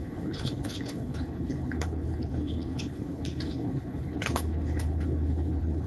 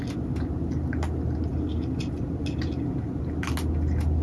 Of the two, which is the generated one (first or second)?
first